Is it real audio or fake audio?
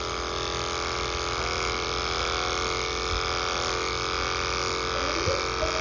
real